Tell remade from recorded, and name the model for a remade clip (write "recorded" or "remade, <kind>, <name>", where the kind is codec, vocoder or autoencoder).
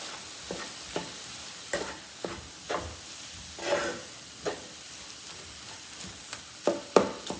recorded